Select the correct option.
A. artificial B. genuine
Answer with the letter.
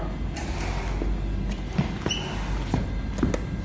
B